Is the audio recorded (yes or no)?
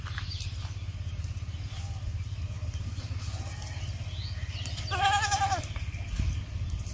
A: yes